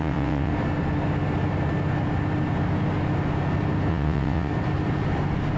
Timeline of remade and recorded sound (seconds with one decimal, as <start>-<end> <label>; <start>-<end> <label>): 0.0-0.5 remade; 0.5-3.9 recorded; 3.9-4.5 remade; 4.5-5.6 recorded